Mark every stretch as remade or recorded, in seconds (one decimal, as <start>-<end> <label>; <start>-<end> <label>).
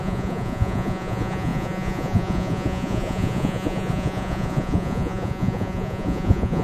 0.0-6.6 remade